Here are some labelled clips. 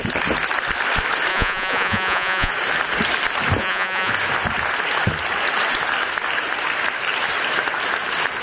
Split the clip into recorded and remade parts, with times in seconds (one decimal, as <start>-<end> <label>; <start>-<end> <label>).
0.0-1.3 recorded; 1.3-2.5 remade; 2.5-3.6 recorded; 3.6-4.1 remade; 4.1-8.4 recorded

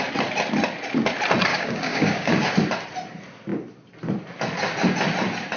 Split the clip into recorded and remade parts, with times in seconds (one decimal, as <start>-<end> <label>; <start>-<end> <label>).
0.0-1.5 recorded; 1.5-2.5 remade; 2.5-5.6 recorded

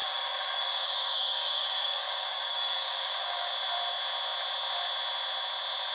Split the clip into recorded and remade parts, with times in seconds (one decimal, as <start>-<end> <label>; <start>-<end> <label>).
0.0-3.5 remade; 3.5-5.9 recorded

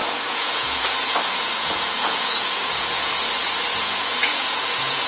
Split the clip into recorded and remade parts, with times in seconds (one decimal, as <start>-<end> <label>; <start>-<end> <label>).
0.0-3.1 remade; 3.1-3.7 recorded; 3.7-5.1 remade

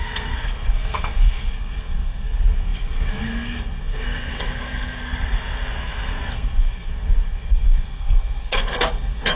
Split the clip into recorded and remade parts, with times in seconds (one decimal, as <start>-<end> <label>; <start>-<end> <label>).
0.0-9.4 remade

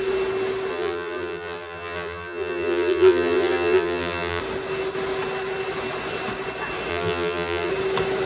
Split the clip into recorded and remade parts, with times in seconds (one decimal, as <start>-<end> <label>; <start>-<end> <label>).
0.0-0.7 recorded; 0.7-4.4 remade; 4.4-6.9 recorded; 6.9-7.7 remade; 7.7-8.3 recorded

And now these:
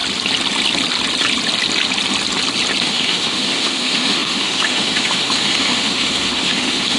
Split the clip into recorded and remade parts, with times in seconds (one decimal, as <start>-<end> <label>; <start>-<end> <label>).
0.0-2.8 recorded; 2.8-7.0 remade

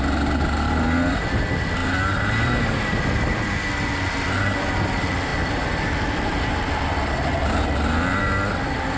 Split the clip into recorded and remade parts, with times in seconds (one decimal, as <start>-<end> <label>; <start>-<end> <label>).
0.0-9.0 recorded